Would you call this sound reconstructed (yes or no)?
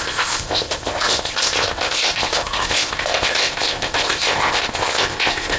yes